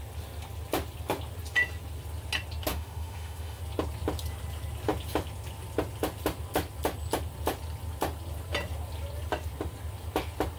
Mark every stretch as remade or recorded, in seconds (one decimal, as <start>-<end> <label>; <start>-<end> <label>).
0.0-2.7 recorded; 2.7-3.6 remade; 3.6-10.6 recorded